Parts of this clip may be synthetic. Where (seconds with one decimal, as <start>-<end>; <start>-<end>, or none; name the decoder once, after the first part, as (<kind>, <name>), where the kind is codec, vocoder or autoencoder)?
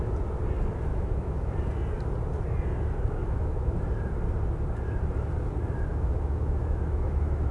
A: 0.9-1.5 (autoencoder, DAC-VAE); 3.2-3.7; 5.9-7.5